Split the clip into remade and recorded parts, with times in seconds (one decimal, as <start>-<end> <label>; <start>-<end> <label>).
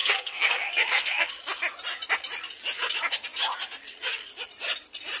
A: 0.0-1.3 remade; 1.3-5.2 recorded